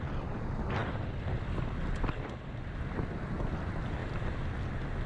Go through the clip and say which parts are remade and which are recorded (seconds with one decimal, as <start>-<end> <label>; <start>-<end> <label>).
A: 0.0-5.1 recorded